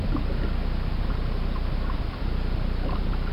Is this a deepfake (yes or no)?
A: no